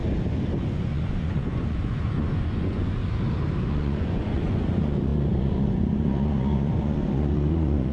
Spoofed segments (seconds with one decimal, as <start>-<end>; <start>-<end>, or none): 0.7-3.0; 3.7-7.9